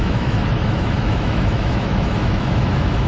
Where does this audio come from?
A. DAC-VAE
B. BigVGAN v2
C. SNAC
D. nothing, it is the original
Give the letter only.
A